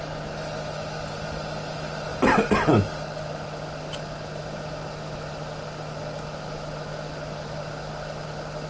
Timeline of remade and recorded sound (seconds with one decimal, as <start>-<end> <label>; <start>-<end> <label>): 0.0-2.1 recorded; 2.1-2.8 remade; 2.8-8.7 recorded